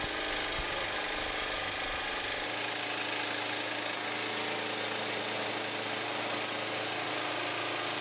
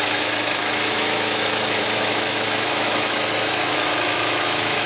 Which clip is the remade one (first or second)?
second